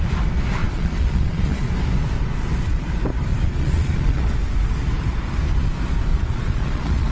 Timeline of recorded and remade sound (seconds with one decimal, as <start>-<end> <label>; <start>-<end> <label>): 0.0-0.6 recorded; 0.6-1.7 remade; 1.7-3.3 recorded; 3.3-4.3 remade; 4.3-6.1 recorded; 6.1-7.1 remade